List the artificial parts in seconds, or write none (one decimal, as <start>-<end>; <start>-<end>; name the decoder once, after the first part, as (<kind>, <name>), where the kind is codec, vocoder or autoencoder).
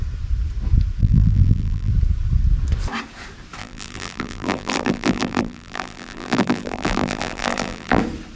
1.0-1.9 (vocoder, BigVGAN v2); 3.6-8.0